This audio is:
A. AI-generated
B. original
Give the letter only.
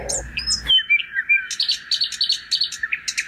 B